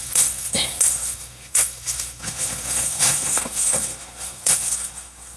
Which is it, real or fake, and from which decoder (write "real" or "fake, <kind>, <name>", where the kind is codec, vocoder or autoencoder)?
fake, codec, SNAC